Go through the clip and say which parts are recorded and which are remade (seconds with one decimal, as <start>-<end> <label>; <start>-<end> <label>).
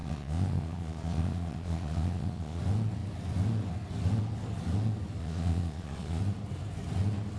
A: 0.0-2.6 remade; 2.6-5.2 recorded; 5.2-6.2 remade; 6.2-7.4 recorded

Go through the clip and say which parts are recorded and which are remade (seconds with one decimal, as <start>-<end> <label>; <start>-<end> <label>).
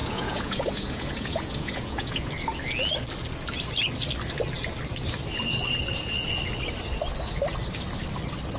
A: 0.0-2.3 remade; 2.3-8.6 recorded